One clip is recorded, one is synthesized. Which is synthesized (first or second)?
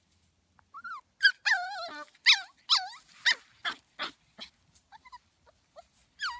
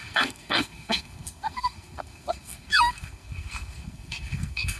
second